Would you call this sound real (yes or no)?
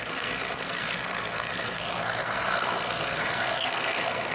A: no